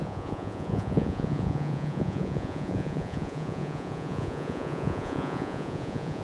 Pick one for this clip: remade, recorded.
remade